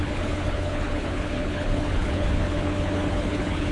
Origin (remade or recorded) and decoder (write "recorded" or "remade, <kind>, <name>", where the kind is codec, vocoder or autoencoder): remade, codec, HILCodec